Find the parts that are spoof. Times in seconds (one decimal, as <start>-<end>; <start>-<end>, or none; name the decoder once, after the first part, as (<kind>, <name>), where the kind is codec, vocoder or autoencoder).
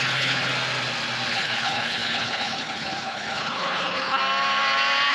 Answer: 0.0-0.5 (codec, HILCodec); 1.3-4.2